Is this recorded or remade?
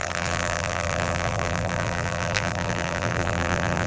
remade